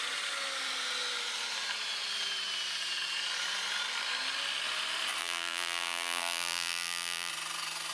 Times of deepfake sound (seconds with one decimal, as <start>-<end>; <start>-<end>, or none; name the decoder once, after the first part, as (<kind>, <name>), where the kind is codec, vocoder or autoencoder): 5.2-7.3 (vocoder, BigVGAN v2)